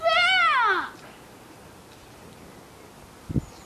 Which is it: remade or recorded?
recorded